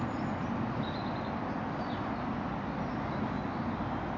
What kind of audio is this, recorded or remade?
recorded